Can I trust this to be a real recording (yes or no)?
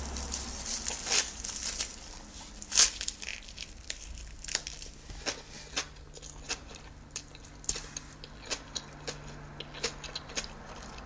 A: yes